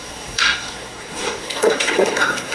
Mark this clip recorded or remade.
remade